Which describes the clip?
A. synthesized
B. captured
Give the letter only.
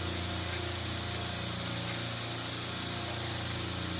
B